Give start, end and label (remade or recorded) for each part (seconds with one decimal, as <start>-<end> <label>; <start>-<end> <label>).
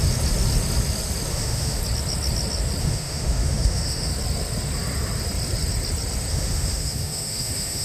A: 0.0-1.3 recorded; 1.3-1.8 remade; 1.8-2.8 recorded; 2.8-4.1 remade; 4.1-6.3 recorded; 6.3-7.8 remade